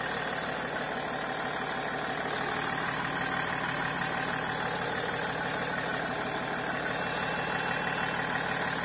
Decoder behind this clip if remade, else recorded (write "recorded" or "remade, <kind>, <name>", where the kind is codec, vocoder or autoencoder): recorded